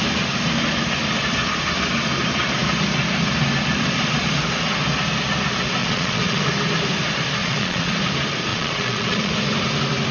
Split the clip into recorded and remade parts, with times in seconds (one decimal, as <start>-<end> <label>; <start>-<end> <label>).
0.0-5.8 recorded; 5.8-6.4 remade; 6.4-7.4 recorded; 7.4-8.0 remade; 8.0-8.5 recorded; 8.5-9.3 remade; 9.3-10.1 recorded